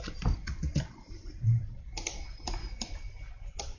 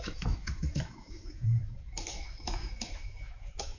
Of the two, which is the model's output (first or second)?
second